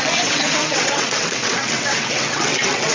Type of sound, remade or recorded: remade